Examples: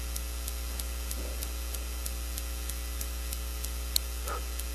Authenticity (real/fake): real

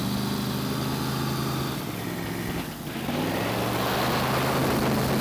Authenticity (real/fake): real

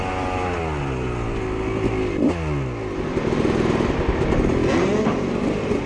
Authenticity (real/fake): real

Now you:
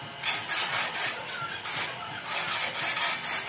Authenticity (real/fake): real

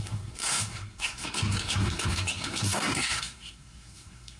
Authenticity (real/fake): fake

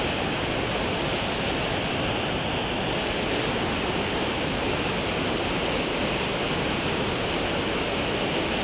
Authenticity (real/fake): real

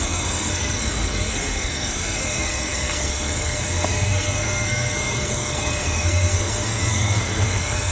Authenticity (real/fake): fake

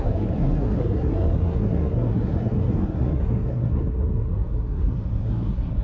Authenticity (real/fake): fake